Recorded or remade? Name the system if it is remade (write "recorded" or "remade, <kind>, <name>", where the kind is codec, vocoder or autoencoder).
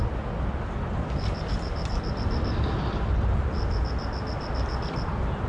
recorded